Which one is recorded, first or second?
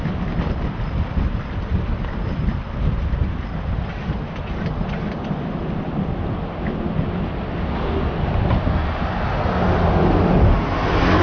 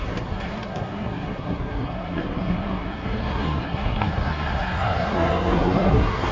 first